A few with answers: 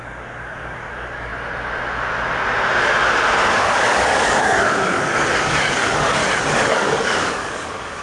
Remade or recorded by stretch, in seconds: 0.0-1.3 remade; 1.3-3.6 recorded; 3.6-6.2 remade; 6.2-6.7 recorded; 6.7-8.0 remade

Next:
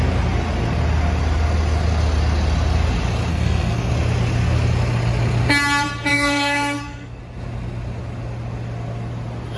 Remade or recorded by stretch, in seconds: 0.0-3.3 recorded; 3.3-3.9 remade; 3.9-6.1 recorded; 6.1-7.2 remade; 7.2-9.6 recorded

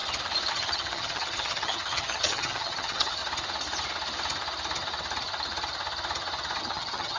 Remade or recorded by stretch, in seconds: 0.0-0.5 recorded; 0.5-3.2 remade; 3.2-6.6 recorded; 6.6-7.2 remade

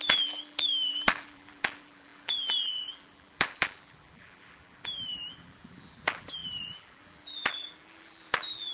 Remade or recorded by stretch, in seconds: 0.0-8.7 remade